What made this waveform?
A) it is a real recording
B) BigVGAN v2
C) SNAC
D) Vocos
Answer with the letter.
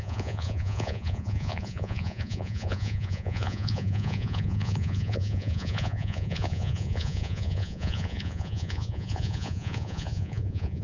D